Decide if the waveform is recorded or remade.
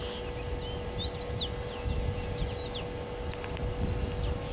recorded